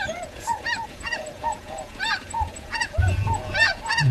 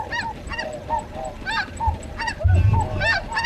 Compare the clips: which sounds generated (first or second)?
first